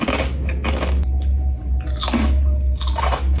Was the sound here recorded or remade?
recorded